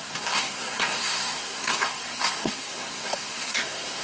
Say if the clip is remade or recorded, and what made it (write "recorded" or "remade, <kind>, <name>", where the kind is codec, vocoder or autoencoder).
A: remade, codec, SNAC